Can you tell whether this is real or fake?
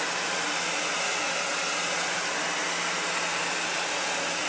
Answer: real